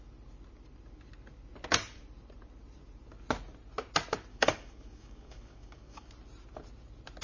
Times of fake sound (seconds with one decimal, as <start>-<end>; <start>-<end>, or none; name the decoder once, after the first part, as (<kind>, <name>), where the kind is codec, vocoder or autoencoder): 4.3-6.1 (codec, DAC)